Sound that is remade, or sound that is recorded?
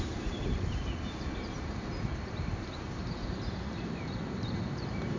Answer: remade